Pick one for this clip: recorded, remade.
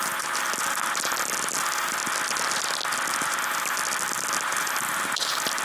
recorded